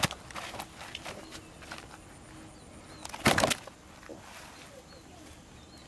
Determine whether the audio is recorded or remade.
recorded